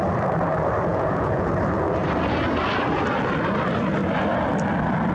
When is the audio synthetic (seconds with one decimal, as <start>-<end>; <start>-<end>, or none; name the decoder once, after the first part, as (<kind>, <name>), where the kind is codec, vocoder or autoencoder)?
0.9-1.5 (vocoder, Vocos)